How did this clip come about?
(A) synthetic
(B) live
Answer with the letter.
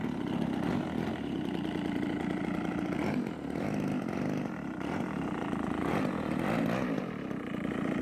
B